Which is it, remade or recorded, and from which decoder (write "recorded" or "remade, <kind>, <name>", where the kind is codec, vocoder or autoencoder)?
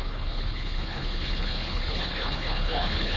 remade, codec, HILCodec